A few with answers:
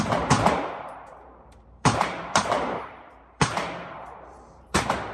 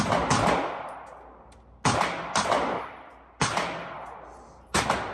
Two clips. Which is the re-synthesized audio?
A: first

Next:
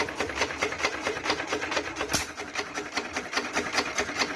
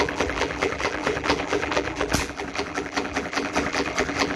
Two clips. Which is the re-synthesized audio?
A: second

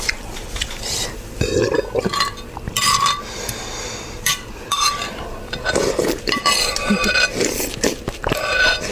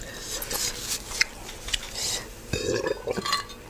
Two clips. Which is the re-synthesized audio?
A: first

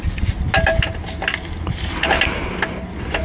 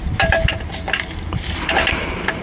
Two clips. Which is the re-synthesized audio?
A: second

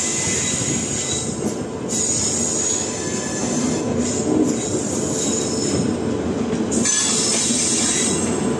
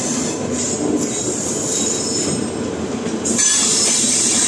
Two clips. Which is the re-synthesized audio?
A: second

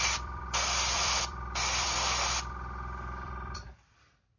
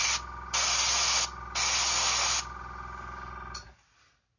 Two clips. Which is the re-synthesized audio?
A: first